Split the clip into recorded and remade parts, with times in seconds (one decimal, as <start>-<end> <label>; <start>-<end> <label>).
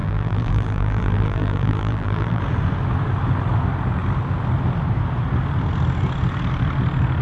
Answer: 0.0-2.4 remade; 2.4-7.2 recorded